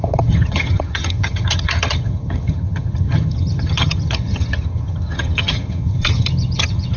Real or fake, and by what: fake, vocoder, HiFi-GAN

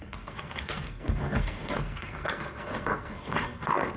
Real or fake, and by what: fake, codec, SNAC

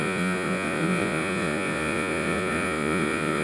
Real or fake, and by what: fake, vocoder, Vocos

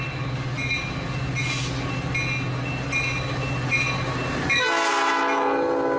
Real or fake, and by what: real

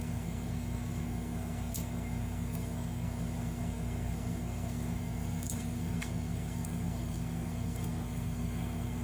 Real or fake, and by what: fake, codec, SNAC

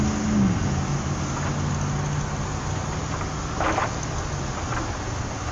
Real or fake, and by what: real